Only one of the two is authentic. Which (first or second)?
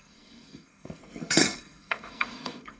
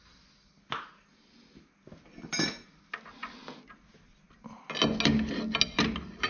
second